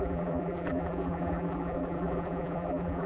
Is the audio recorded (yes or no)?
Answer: no